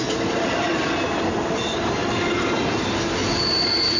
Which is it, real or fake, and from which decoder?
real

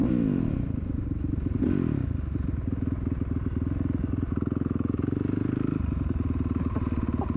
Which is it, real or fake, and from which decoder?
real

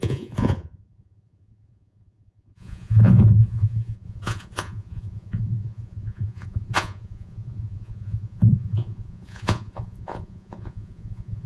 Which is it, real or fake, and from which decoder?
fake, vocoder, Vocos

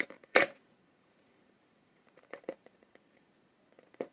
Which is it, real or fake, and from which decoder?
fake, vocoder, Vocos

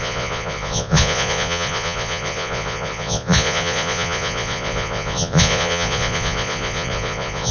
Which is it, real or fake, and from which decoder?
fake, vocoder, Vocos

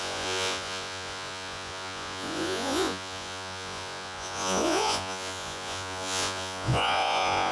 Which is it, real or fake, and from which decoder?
fake, vocoder, Vocos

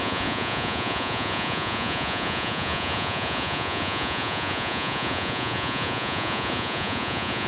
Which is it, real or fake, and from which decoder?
fake, vocoder, Vocos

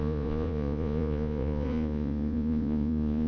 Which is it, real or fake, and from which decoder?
fake, vocoder, Vocos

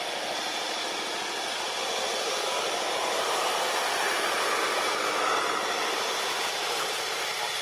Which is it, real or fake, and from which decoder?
real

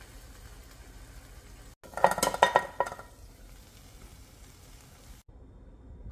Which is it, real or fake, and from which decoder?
real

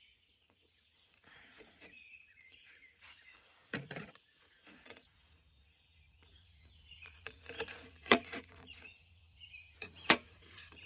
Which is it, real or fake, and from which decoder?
fake, vocoder, Vocos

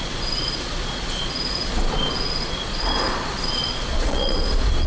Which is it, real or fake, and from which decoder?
fake, vocoder, Vocos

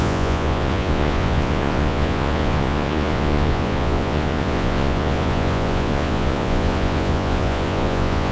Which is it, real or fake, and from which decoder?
fake, vocoder, Vocos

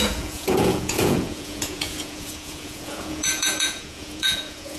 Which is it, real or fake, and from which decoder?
fake, vocoder, Vocos